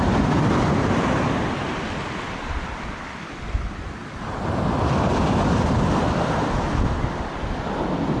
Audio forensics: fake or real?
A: fake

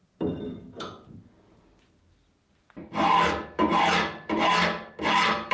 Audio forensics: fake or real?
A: real